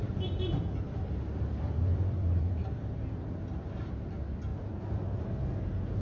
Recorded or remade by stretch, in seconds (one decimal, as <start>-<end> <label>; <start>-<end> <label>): 0.0-0.5 recorded; 0.5-3.2 remade; 3.2-4.5 recorded; 4.5-5.2 remade; 5.2-6.0 recorded